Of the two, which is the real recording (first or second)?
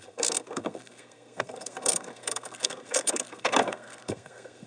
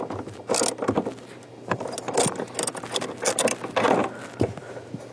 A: second